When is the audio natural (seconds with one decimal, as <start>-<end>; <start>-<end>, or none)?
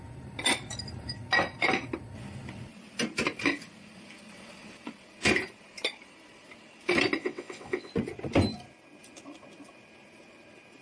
0.0-7.2; 7.9-10.8